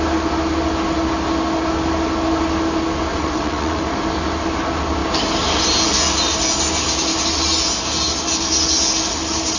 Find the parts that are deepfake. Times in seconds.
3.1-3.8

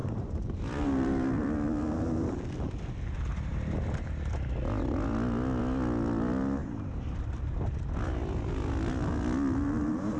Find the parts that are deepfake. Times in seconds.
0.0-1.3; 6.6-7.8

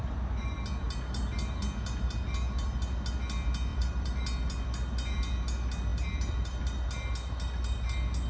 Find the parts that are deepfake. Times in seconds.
3.7-4.2; 5.9-6.6

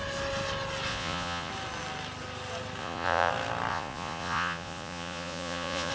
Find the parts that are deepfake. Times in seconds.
0.9-1.5; 2.8-3.3; 3.7-5.9

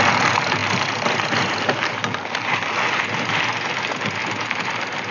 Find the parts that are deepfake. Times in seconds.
none

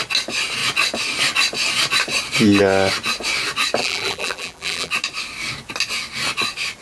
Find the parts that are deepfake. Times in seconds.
3.8-4.9

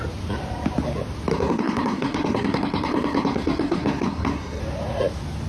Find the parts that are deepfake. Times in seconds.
1.3-4.6

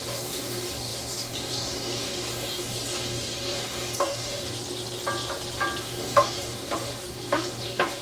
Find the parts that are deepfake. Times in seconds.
0.0-4.6; 5.8-8.0